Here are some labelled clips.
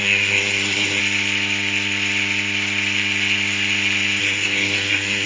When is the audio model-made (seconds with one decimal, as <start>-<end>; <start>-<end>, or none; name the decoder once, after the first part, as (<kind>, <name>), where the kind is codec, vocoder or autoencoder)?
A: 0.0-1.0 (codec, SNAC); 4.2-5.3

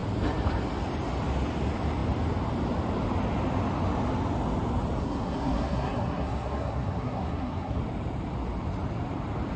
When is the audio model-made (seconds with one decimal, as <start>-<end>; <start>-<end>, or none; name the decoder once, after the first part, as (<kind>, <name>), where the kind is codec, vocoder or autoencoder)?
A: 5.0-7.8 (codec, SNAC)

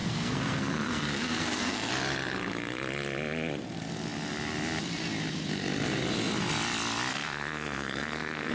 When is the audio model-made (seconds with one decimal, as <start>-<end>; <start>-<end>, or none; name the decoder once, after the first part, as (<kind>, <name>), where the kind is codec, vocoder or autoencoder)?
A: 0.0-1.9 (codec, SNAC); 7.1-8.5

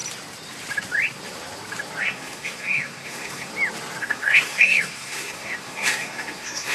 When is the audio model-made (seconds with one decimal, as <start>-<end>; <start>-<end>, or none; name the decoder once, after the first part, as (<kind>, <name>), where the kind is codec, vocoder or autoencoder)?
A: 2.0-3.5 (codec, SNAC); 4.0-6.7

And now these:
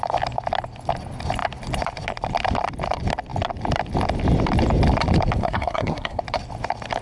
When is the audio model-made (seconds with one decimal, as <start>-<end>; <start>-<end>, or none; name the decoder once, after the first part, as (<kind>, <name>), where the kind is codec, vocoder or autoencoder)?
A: 5.4-6.2 (codec, SNAC)

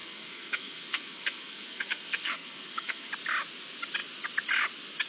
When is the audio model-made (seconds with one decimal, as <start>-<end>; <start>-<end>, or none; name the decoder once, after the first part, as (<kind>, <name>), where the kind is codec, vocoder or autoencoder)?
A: 0.0-3.1 (codec, SNAC)

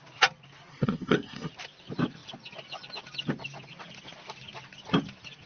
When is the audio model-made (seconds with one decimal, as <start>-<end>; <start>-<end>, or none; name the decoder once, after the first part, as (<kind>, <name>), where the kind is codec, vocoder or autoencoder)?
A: 0.7-1.5 (codec, SNAC)